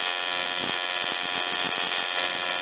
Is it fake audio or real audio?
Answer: real